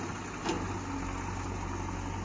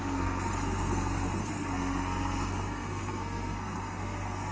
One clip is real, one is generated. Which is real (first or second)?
first